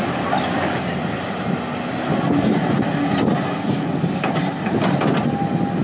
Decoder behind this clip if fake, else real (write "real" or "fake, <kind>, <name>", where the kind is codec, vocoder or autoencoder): real